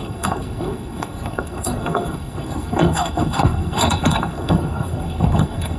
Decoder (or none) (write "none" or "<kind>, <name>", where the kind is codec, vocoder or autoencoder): codec, SNAC